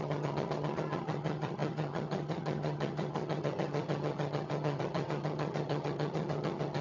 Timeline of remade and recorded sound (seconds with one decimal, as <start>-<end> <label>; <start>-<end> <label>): 0.0-6.8 remade